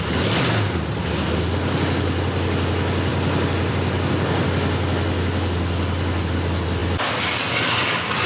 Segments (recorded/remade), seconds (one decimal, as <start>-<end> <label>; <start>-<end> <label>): 0.0-8.3 recorded